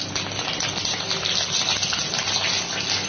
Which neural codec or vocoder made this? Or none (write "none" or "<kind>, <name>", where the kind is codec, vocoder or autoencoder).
none